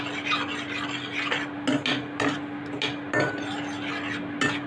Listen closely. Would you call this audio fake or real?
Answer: real